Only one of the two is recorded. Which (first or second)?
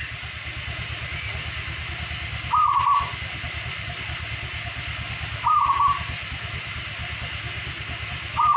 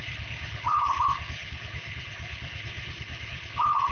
first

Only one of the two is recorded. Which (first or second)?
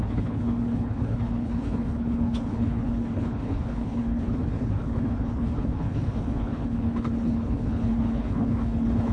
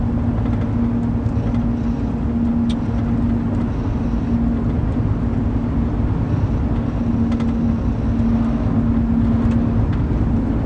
second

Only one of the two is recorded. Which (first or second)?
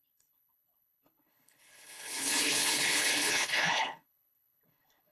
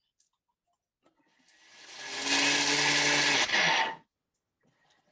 second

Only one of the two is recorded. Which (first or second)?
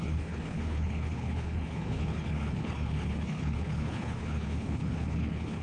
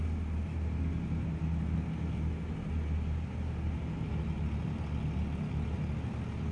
second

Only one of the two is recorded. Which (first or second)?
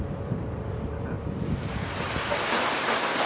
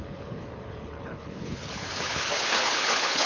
first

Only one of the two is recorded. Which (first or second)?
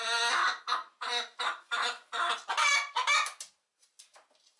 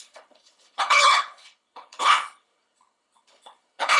first